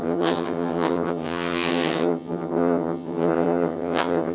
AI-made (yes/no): yes